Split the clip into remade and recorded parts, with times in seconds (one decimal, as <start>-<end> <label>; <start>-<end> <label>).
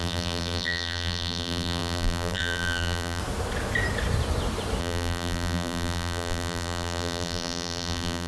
0.0-3.2 remade; 3.2-4.8 recorded; 4.8-8.3 remade